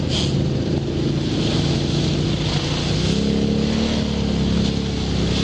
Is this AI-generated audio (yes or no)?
no